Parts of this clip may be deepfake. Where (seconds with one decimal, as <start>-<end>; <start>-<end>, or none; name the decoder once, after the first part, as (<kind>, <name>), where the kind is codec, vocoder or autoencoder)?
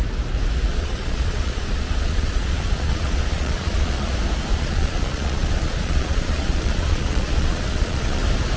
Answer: 0.7-4.1 (vocoder, Vocos); 4.5-8.2